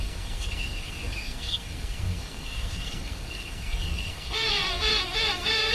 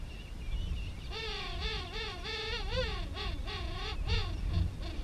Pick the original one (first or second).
second